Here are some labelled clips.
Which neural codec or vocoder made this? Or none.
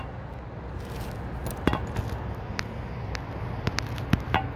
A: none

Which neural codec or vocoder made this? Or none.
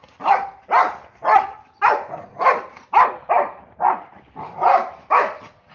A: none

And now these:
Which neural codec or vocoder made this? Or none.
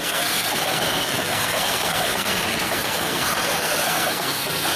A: codec, SNAC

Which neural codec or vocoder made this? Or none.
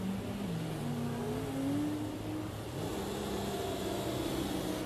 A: none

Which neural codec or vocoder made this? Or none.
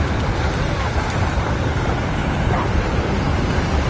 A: none